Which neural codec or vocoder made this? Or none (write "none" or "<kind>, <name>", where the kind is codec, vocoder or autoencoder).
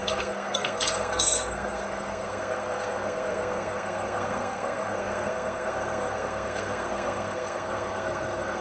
codec, SNAC